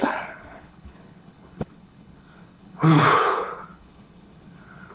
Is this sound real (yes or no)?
no